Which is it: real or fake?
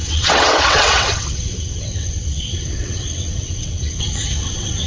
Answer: fake